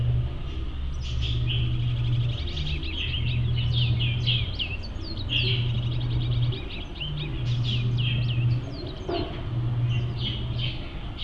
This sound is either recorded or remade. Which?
recorded